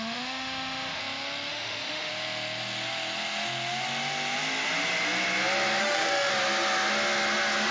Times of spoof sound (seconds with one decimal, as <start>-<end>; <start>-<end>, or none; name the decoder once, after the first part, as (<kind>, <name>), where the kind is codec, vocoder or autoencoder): 0.0-1.0 (autoencoder, DAC-VAE); 1.5-2.1; 5.8-6.3